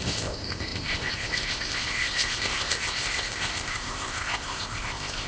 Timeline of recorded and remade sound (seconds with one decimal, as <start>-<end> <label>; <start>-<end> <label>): 0.0-5.3 remade